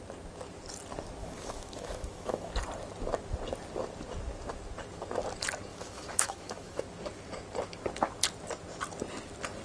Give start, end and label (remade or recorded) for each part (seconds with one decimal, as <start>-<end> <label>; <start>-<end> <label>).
0.0-1.2 recorded; 1.2-2.5 remade; 2.5-5.7 recorded; 5.7-6.8 remade; 6.8-9.6 recorded